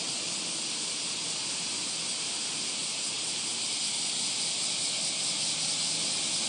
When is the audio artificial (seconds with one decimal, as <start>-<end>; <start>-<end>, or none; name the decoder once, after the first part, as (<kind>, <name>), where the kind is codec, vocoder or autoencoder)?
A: none